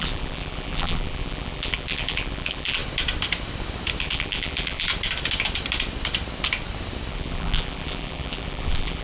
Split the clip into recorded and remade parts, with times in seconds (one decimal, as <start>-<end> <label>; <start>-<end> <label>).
0.0-2.8 remade; 2.8-4.0 recorded; 4.0-4.9 remade; 4.9-7.1 recorded; 7.1-9.0 remade